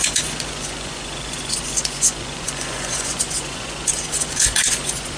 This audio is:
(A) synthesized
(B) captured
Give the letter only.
A